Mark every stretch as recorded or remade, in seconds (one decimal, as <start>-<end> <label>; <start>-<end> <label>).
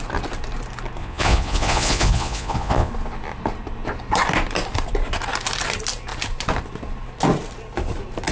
0.0-1.0 recorded; 1.0-2.9 remade; 2.9-8.3 recorded